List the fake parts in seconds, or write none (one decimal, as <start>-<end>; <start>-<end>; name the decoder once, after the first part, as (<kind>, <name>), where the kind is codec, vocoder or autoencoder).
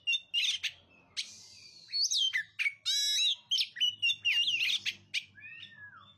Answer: none